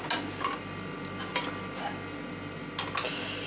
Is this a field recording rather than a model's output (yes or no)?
yes